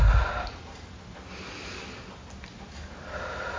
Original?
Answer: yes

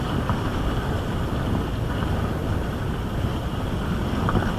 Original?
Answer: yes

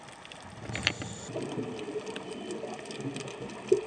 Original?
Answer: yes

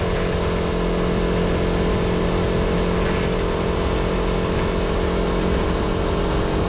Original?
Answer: yes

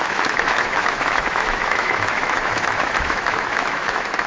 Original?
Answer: no